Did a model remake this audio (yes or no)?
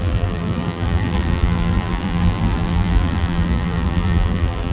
yes